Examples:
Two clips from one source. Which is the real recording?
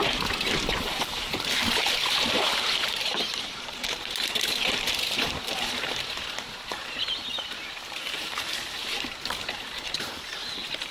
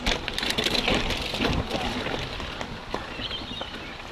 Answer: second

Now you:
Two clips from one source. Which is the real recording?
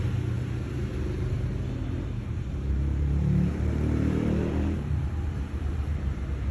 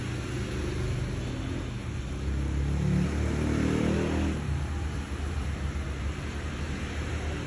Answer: second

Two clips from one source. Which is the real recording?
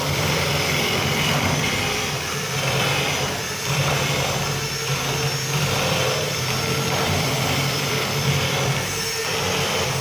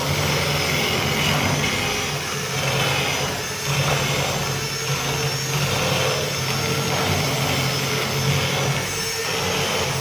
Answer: second